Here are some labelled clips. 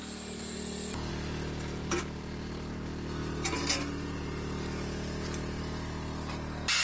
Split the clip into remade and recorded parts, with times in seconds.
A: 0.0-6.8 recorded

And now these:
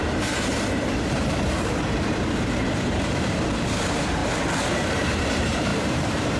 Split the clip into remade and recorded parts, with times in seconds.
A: 0.0-4.2 remade; 4.2-4.9 recorded; 4.9-6.4 remade

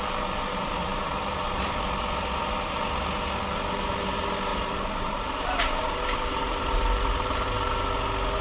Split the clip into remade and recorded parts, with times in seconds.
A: 0.0-4.5 recorded; 4.5-7.3 remade; 7.3-8.4 recorded

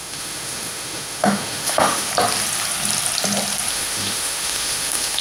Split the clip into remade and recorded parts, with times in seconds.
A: 0.0-2.1 remade; 2.1-3.7 recorded; 3.7-5.2 remade

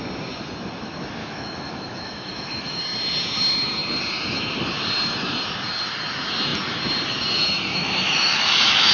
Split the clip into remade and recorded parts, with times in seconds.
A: 0.0-1.2 recorded; 1.2-2.8 remade; 2.8-7.7 recorded; 7.7-8.9 remade

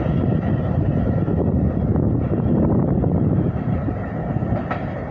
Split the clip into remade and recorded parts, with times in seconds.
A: 0.0-5.1 recorded

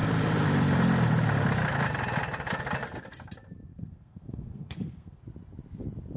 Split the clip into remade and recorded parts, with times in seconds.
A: 0.0-3.7 recorded; 3.7-5.2 remade; 5.2-6.2 recorded

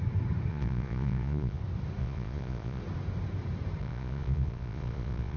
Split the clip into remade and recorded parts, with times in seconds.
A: 0.0-0.5 recorded; 0.5-1.6 remade; 1.6-2.0 recorded; 2.0-2.8 remade; 2.8-3.8 recorded; 3.8-5.4 remade